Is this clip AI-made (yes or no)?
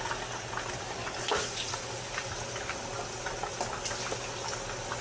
no